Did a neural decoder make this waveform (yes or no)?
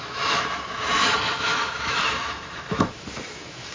yes